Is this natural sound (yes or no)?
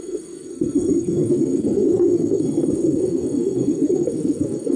no